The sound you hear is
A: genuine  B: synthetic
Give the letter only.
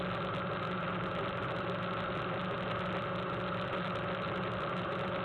A